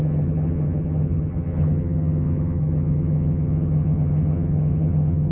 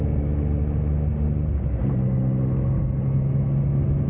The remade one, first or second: first